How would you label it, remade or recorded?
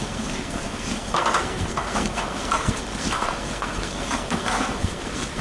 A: remade